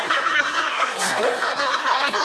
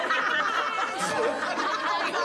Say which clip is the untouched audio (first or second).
second